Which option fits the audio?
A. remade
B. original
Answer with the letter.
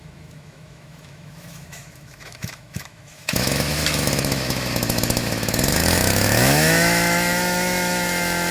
A